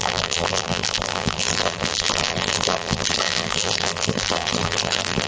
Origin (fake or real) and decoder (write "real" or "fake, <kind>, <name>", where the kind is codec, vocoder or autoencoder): fake, vocoder, BigVGAN v2